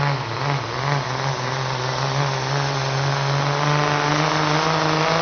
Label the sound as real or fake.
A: real